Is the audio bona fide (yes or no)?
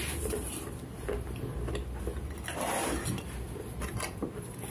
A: yes